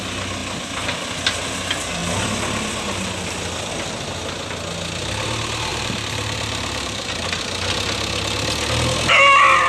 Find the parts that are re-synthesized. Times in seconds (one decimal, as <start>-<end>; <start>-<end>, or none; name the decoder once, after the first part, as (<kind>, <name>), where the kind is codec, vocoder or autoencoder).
5.7-7.4 (vocoder, BigVGAN v2)